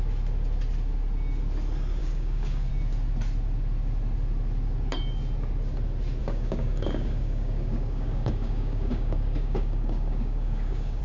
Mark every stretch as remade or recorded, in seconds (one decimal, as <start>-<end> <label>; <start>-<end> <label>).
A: 0.0-2.0 recorded; 2.0-2.7 remade; 2.7-6.2 recorded; 6.2-11.0 remade